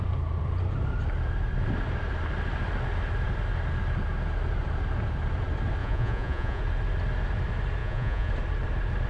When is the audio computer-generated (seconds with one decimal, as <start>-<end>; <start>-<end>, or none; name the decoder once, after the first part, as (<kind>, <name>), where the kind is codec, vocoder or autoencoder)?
5.8-6.6 (vocoder, Vocos); 7.8-8.3